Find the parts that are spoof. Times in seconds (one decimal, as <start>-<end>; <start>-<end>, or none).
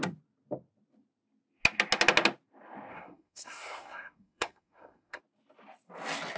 2.9-5.2